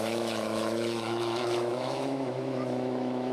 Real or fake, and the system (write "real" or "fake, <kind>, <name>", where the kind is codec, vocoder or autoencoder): fake, autoencoder, DAC-VAE